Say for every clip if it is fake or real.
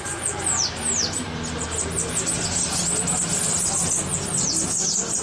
real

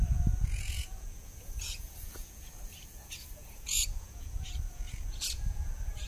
fake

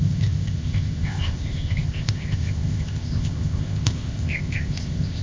fake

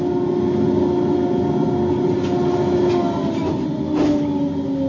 real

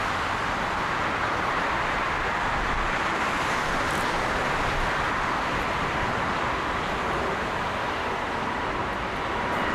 real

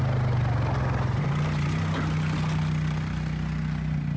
real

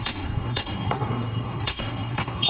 fake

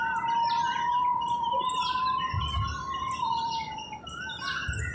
real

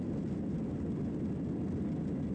real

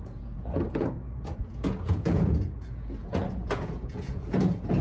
fake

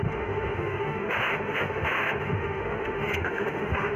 fake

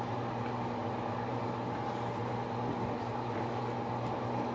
real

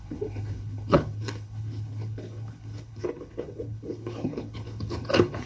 fake